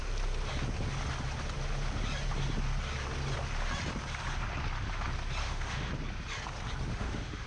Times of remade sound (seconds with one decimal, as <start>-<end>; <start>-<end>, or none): 5.4-5.9; 6.9-7.5

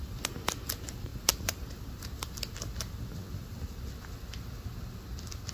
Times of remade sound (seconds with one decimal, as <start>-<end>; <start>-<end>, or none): none

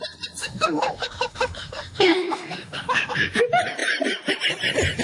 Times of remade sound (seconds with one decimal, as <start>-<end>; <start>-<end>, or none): 0.4-3.4

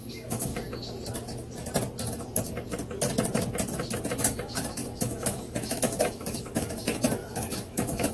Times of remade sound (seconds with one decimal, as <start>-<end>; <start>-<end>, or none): 0.0-0.5; 4.2-8.1

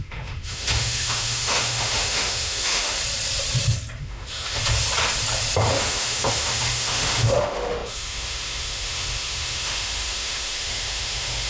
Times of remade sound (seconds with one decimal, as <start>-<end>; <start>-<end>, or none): 0.0-3.0; 4.0-4.6; 5.8-11.5

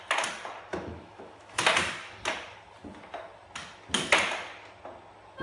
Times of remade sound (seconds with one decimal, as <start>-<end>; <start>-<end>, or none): 0.7-1.6